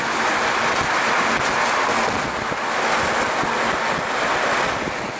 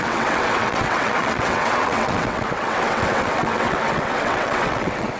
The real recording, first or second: first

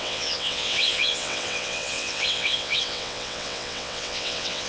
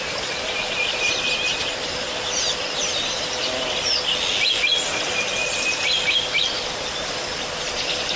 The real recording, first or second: second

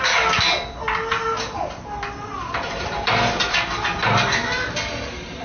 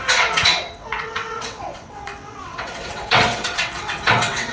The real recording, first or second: first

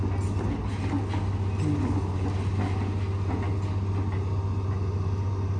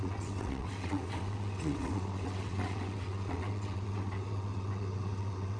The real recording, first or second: first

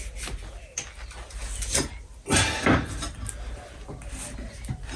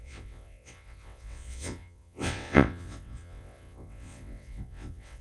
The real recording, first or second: first